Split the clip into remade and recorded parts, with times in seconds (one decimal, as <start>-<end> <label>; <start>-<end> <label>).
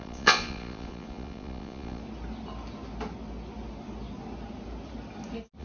0.0-2.0 remade; 2.0-5.6 recorded